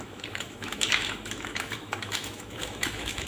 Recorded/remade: remade